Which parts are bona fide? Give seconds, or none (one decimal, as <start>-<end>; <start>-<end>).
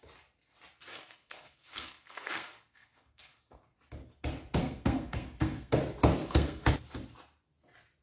0.0-0.9; 3.6-4.6; 5.8-6.2; 6.7-8.0